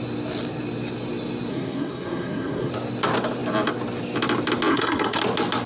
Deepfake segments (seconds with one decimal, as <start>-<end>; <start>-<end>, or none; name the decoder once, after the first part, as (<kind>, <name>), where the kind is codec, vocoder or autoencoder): 1.5-2.7 (codec, SNAC); 4.7-5.2